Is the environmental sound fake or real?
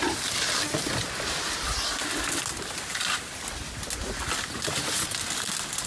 real